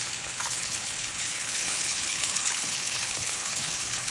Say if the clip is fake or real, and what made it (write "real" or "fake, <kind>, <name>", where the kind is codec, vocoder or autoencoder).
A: fake, codec, HILCodec